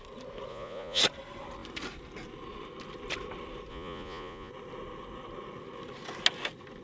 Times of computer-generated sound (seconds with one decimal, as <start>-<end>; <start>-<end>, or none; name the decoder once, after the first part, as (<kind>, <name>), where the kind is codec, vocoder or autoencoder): 0.5-1.0 (vocoder, Vocos); 3.7-4.5